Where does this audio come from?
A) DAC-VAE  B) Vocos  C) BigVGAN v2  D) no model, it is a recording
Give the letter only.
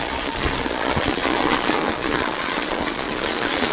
B